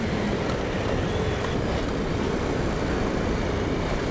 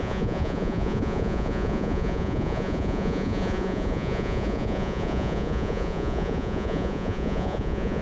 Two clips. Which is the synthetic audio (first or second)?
second